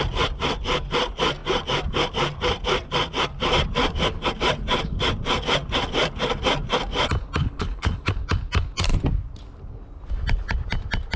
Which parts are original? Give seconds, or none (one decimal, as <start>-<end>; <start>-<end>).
0.0-7.4; 8.1-11.2